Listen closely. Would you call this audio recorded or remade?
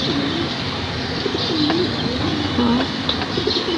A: recorded